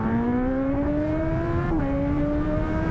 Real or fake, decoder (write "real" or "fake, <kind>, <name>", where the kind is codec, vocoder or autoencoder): fake, vocoder, BigVGAN v2